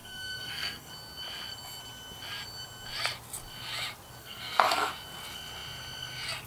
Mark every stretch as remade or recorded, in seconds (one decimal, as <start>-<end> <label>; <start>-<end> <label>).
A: 0.0-0.9 remade; 0.9-4.2 recorded; 4.2-4.9 remade; 4.9-6.5 recorded